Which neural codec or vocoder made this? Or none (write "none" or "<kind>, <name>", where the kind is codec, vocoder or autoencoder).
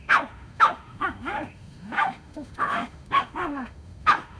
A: autoencoder, DAC-VAE